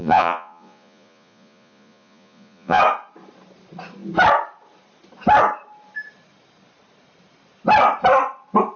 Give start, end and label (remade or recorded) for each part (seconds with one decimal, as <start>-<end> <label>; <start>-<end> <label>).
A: 0.0-2.8 remade; 2.8-8.8 recorded